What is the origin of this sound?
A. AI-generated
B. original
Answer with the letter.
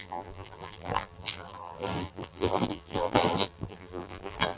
A